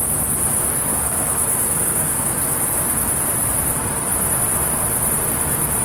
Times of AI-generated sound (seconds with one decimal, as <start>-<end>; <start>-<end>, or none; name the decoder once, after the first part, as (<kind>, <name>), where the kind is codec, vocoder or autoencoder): 0.9-3.1 (autoencoder, DAC-VAE)